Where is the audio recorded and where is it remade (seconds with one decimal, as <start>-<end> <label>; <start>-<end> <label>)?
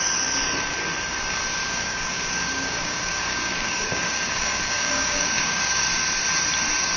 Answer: 0.0-1.6 recorded; 1.6-5.8 remade; 5.8-7.0 recorded